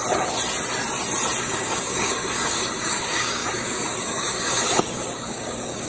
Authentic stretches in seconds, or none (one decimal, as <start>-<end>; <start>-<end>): 0.0-1.4